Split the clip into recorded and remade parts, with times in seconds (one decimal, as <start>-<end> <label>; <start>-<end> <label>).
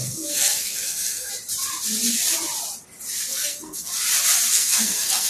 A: 0.0-1.3 remade; 1.3-3.3 recorded; 3.3-3.9 remade; 3.9-4.5 recorded; 4.5-5.3 remade